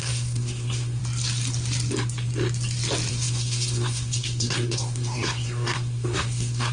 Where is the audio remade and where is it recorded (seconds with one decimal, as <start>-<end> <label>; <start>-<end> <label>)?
0.0-1.0 remade; 1.0-3.1 recorded; 3.1-6.7 remade